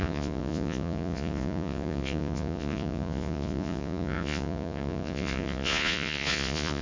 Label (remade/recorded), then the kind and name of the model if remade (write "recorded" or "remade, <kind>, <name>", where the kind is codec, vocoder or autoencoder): remade, vocoder, Vocos